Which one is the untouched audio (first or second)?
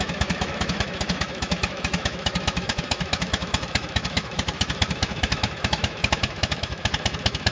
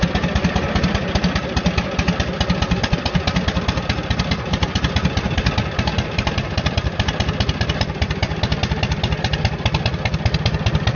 second